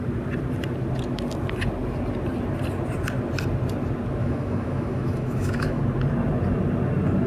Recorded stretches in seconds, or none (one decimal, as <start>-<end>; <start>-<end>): 0.0-4.2; 5.8-7.3